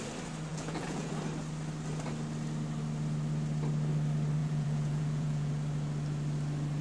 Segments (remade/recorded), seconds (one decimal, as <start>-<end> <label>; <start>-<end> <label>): 0.0-0.5 recorded; 0.5-1.1 remade; 1.1-4.4 recorded; 4.4-5.5 remade; 5.5-6.8 recorded